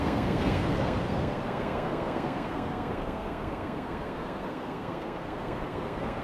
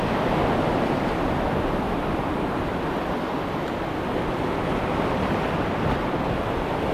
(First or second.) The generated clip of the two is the first